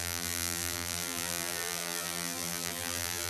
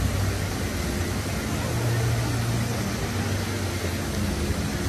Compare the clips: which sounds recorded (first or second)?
second